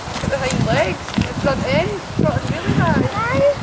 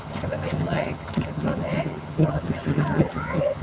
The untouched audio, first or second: first